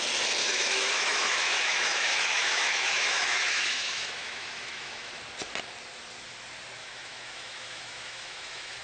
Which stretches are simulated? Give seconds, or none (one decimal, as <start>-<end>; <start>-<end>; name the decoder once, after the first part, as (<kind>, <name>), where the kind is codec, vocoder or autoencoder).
0.4-5.1 (autoencoder, DAC-VAE); 6.8-8.8